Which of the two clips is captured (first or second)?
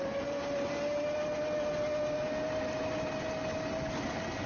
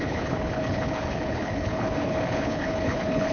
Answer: first